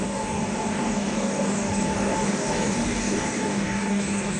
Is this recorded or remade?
remade